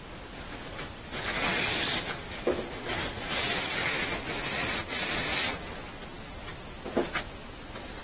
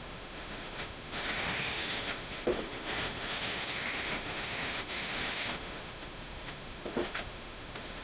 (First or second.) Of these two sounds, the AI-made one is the second